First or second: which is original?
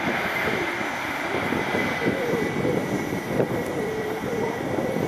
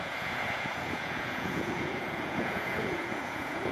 first